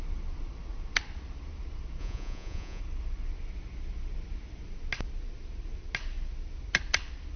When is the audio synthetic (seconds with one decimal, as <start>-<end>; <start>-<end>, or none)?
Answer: 2.0-2.8